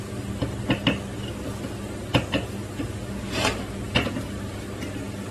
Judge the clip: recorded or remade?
remade